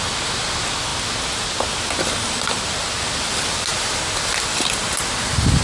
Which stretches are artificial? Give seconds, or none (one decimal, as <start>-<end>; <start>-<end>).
none